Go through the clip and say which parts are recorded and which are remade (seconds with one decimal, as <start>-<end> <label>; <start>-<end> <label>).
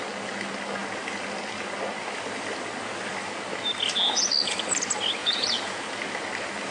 0.0-5.2 recorded; 5.2-5.8 remade; 5.8-6.7 recorded